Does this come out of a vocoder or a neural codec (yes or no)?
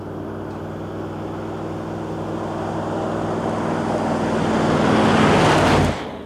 no